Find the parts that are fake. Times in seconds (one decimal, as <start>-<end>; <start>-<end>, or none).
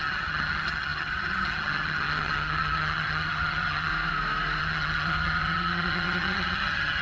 0.0-3.9; 4.6-7.0